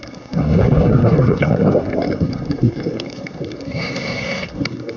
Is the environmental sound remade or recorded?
remade